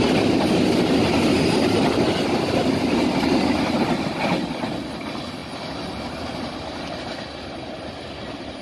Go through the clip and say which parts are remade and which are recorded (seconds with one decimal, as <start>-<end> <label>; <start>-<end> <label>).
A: 0.0-8.6 recorded